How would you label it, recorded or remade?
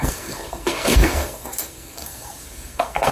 remade